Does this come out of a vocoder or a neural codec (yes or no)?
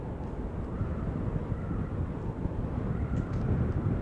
no